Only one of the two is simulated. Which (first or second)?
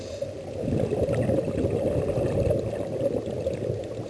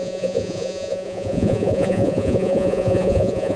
second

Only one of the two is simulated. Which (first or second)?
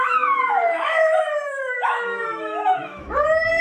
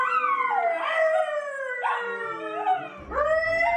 first